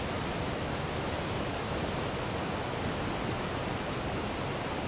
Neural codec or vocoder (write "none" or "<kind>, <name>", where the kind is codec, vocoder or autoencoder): none